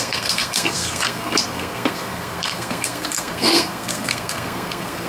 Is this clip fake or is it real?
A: fake